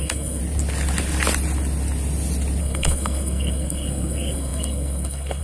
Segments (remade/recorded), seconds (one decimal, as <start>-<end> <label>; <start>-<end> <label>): 0.0-0.4 remade; 0.4-2.6 recorded; 2.6-5.4 remade

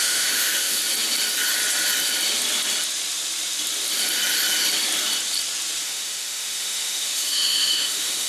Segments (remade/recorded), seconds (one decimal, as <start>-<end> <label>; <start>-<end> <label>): 0.0-0.8 remade; 0.8-5.8 recorded; 5.8-8.3 remade